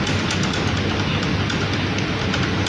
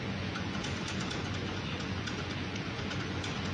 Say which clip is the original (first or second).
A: first